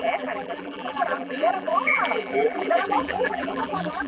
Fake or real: fake